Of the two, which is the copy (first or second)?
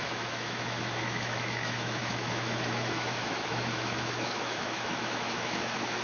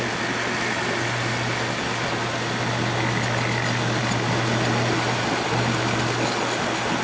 first